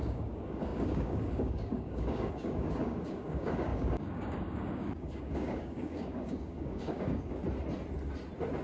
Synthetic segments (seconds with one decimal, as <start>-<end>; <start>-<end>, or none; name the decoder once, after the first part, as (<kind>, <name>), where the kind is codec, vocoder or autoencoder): 0.0-7.4 (codec, DAC)

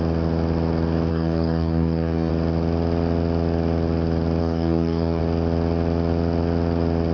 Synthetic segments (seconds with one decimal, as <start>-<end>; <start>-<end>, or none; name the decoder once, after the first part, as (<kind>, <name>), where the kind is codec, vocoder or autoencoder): 1.1-2.3 (codec, DAC); 4.4-5.2

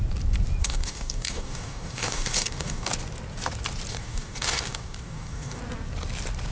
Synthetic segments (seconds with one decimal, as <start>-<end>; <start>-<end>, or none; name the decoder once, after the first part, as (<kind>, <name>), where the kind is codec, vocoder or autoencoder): 0.6-2.9 (codec, DAC); 3.9-5.6